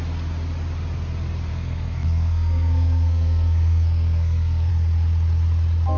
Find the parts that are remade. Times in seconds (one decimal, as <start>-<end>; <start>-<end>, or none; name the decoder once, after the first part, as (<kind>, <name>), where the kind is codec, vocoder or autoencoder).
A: 1.5-4.7 (codec, SNAC)